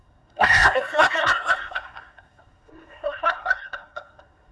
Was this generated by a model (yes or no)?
yes